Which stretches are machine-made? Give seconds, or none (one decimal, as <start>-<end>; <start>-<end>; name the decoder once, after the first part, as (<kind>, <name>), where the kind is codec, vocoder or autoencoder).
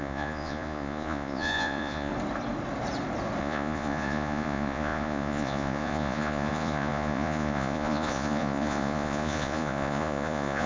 0.0-2.1 (vocoder, Vocos); 3.4-10.7